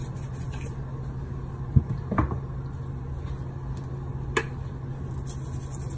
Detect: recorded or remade recorded